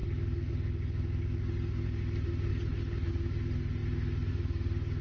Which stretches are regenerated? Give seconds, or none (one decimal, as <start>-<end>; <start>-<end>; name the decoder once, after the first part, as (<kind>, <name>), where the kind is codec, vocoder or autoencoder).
2.5-3.1 (codec, HILCodec)